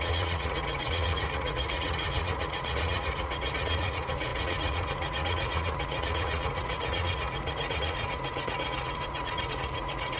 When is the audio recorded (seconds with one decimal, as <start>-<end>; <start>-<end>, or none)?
none